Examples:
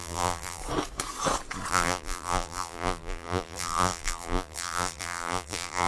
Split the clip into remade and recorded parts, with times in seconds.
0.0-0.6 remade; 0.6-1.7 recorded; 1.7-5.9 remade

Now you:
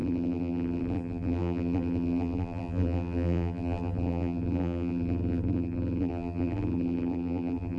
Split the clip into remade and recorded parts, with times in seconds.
0.0-7.8 remade

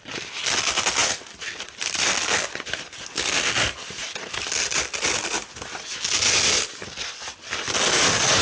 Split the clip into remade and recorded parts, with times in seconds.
0.0-1.0 recorded; 1.0-5.9 remade; 5.9-8.4 recorded

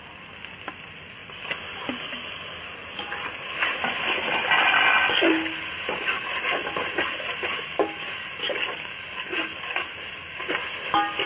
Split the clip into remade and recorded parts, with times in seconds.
0.0-1.2 recorded; 1.2-6.0 remade; 6.0-6.6 recorded; 6.6-7.3 remade; 7.3-11.3 recorded

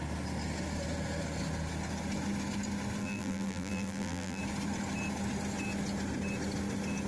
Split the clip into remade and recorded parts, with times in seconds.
0.0-3.0 recorded; 3.0-4.4 remade; 4.4-7.1 recorded

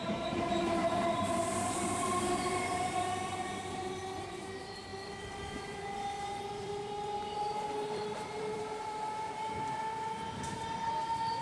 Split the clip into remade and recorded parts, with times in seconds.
0.0-4.9 remade; 4.9-6.3 recorded; 6.3-11.4 remade

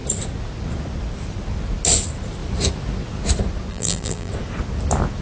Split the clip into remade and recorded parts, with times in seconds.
0.0-3.7 recorded; 3.7-4.3 remade; 4.3-5.2 recorded

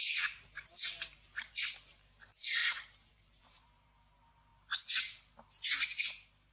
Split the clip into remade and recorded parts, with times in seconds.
0.0-4.5 remade; 4.5-6.5 recorded